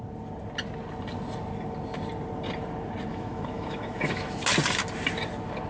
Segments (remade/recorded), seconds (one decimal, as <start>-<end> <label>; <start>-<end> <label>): 0.0-3.1 recorded; 3.1-4.4 remade; 4.4-5.7 recorded